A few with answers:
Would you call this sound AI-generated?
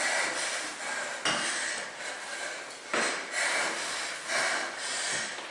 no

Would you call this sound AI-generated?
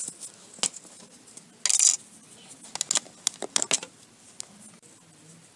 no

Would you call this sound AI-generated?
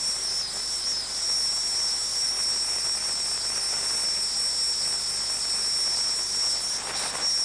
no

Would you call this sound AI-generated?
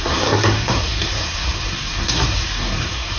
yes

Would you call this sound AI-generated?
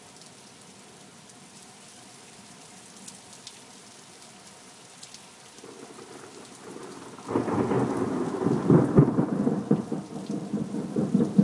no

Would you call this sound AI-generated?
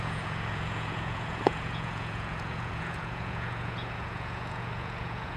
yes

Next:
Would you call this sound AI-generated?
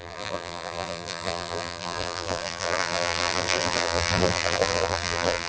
yes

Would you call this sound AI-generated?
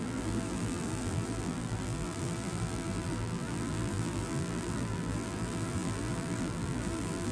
yes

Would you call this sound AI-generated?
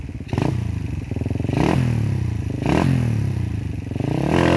no